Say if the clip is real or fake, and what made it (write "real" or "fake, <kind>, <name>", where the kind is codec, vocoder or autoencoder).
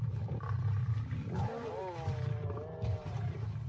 real